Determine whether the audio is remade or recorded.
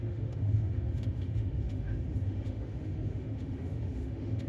remade